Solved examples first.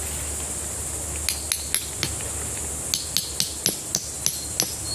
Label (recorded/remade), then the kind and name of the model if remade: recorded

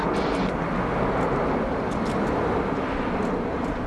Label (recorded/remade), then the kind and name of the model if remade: recorded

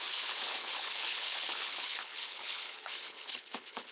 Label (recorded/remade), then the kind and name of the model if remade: remade, codec, HILCodec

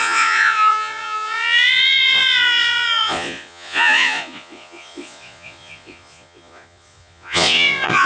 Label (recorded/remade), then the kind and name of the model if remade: remade, vocoder, Vocos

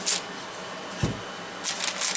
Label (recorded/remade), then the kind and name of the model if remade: recorded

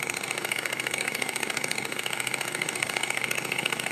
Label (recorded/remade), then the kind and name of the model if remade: remade, codec, DAC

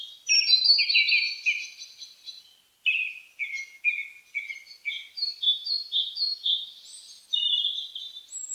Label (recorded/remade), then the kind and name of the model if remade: recorded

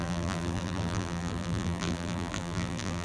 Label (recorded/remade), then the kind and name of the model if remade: remade, vocoder, BigVGAN v2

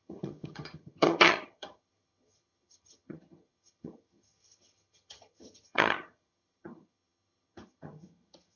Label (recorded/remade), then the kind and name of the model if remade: remade, vocoder, HiFi-GAN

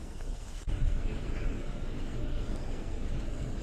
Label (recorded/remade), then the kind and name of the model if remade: remade, codec, SNAC